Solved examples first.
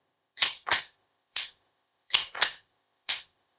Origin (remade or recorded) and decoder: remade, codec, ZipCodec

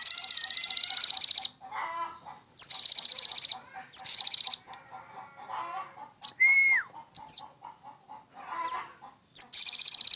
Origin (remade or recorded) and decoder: recorded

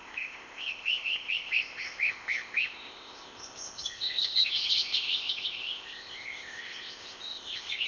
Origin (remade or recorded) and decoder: remade, codec, ZipCodec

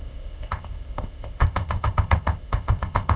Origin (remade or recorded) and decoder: remade, codec, ZipCodec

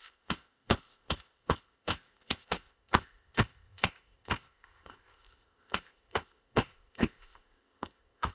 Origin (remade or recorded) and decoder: remade, codec, ZipCodec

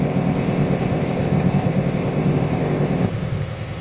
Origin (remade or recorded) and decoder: remade, codec, ZipCodec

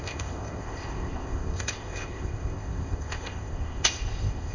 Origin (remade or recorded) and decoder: remade, codec, ZipCodec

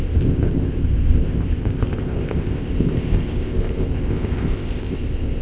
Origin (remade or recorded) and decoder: remade, codec, ZipCodec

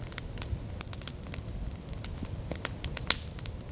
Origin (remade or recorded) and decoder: recorded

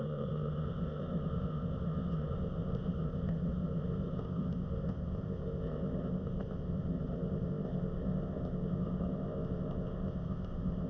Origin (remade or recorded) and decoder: remade, codec, ZipCodec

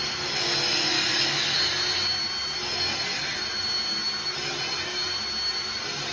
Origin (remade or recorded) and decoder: recorded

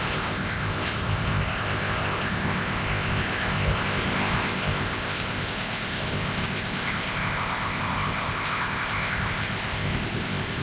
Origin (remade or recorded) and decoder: remade, codec, ZipCodec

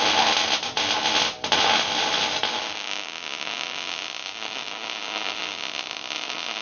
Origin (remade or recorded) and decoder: recorded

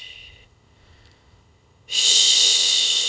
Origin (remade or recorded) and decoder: remade, codec, ZipCodec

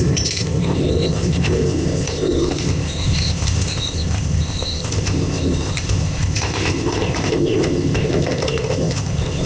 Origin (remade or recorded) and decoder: remade, codec, ZipCodec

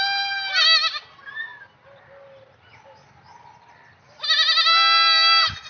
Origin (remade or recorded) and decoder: recorded